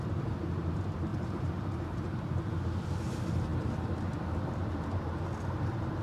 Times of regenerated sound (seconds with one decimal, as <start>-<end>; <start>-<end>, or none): 1.1-1.9